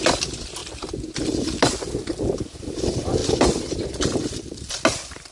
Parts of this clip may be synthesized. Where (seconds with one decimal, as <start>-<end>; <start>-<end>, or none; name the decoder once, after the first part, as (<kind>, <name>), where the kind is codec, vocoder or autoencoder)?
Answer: 3.2-4.7 (vocoder, BigVGAN v2)